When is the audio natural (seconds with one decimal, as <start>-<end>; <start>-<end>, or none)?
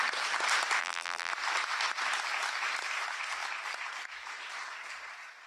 0.0-0.8; 1.3-5.5